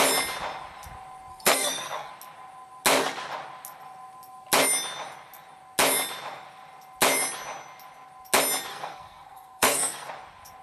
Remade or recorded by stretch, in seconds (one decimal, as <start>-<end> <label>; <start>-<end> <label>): 0.0-1.3 recorded; 1.3-2.1 remade; 2.1-8.7 recorded; 8.7-10.1 remade; 10.1-10.6 recorded